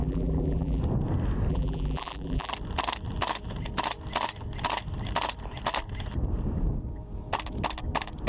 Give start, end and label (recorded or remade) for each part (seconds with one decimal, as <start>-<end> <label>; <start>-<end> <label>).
0.0-0.8 remade; 0.8-1.5 recorded; 1.5-2.5 remade; 2.5-8.3 recorded